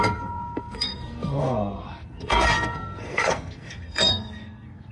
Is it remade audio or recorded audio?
remade